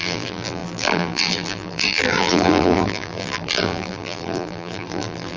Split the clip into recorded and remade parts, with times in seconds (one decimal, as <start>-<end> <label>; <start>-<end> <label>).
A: 0.0-5.4 remade